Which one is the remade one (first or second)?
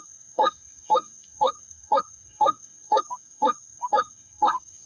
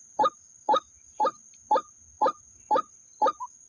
first